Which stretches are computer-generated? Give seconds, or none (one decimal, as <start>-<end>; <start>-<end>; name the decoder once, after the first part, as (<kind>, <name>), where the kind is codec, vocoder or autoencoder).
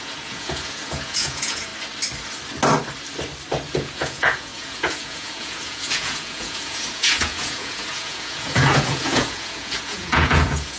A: 0.0-1.7 (vocoder, Vocos); 3.7-10.8